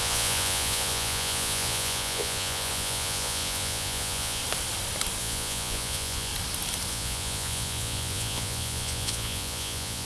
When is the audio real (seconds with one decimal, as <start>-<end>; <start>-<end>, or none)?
4.4-5.2; 6.3-6.9